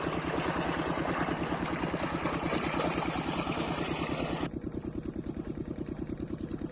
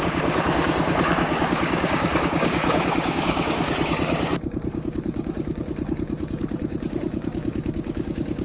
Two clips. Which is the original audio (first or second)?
first